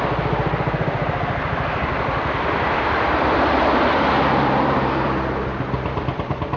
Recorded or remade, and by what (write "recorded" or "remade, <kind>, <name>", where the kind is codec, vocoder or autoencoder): remade, vocoder, BigVGAN v2